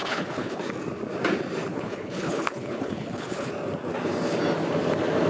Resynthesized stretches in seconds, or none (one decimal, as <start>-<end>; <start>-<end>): 0.0-0.6; 1.7-3.5